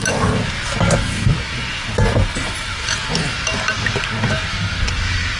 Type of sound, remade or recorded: recorded